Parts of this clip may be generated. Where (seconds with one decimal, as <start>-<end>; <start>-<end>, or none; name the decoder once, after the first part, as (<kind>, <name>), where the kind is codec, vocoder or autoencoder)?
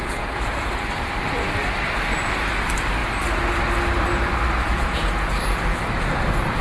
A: 0.0-0.7 (vocoder, Vocos); 4.7-5.4